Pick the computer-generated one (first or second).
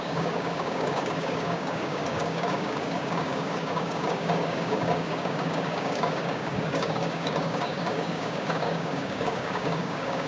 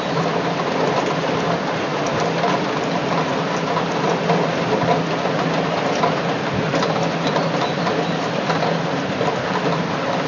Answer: first